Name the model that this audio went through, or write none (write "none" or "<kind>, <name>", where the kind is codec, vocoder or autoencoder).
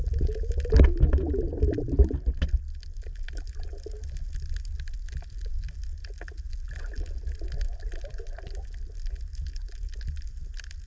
none